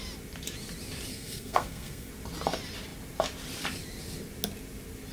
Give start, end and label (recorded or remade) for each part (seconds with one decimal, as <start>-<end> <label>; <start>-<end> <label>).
0.0-1.1 recorded; 1.1-2.1 remade; 2.1-5.1 recorded